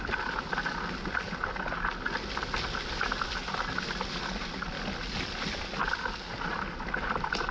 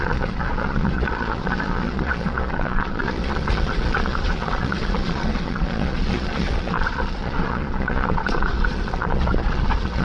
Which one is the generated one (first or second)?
second